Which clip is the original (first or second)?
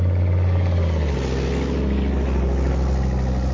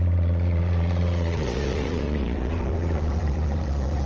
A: first